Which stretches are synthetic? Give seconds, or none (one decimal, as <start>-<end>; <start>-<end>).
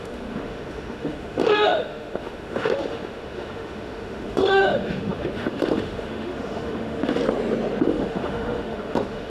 0.0-7.2; 7.8-9.3